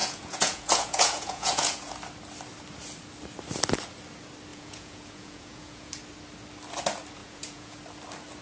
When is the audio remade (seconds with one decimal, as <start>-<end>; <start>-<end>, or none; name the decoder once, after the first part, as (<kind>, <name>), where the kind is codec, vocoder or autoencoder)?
0.0-1.9 (vocoder, Vocos); 4.5-5.9; 7.2-7.8